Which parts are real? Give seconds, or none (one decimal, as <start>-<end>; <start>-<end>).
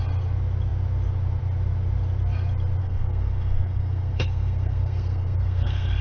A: 0.0-2.8